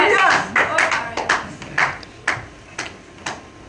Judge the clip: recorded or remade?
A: recorded